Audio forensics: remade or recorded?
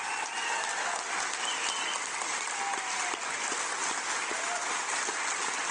recorded